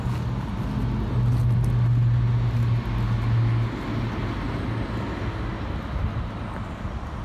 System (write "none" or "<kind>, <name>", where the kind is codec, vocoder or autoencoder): none